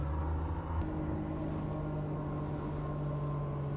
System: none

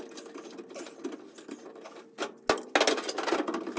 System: none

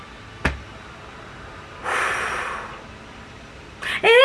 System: none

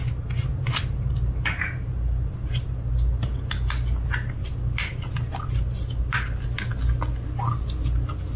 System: none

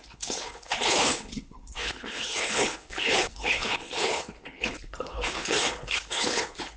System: codec, HILCodec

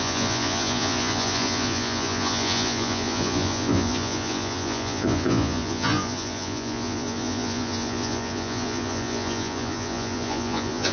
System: vocoder, Vocos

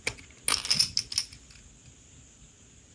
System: none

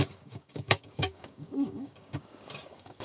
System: codec, DAC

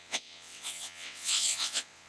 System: vocoder, WaveNeXt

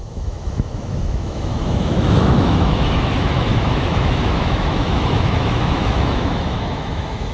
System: autoencoder, DAC-VAE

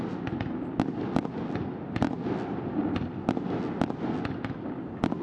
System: none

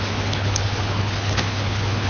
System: codec, HILCodec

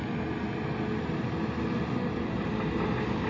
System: none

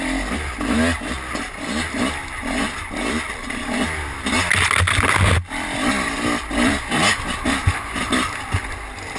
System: none